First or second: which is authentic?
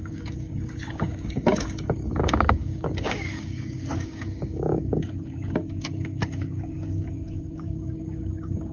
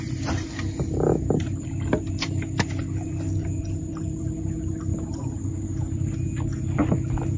second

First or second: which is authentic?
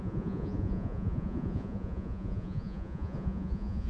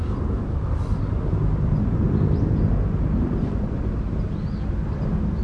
second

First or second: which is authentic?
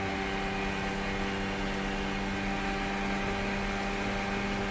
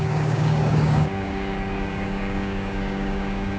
first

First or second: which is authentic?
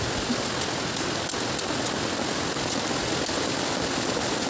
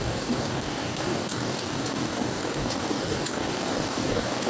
first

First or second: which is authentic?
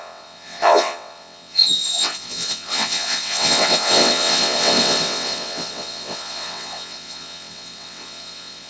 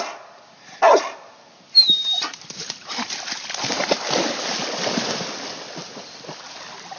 second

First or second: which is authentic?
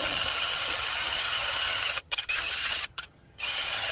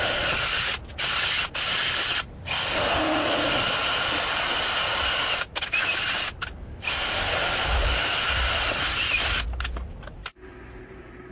second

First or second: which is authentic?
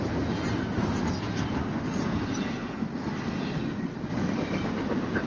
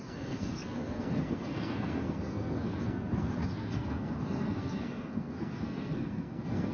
first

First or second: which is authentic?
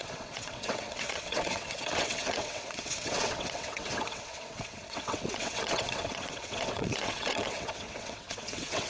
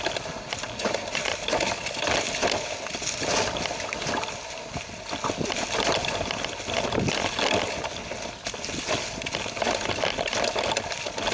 second